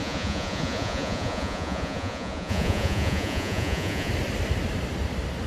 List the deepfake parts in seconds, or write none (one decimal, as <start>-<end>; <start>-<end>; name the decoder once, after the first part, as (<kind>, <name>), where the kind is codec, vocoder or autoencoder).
0.0-4.1 (vocoder, Vocos)